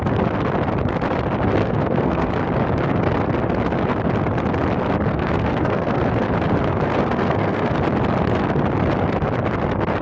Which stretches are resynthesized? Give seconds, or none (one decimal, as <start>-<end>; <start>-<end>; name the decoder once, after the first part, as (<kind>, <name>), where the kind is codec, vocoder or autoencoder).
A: 1.6-2.3 (codec, SNAC); 5.1-6.0; 7.0-7.7